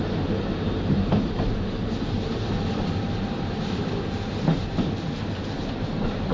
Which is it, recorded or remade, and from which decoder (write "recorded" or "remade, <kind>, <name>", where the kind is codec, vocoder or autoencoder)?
remade, vocoder, BigVGAN v2